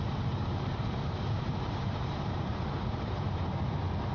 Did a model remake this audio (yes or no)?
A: yes